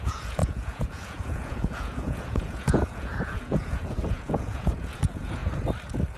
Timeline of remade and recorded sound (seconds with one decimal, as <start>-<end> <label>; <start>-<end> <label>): 0.0-5.4 remade; 5.4-6.2 recorded